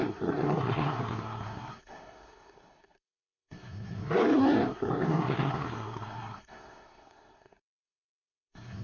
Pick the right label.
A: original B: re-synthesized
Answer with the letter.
B